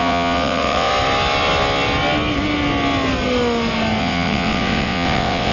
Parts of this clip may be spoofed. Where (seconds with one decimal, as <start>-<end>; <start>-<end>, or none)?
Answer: 0.0-0.9; 4.0-5.5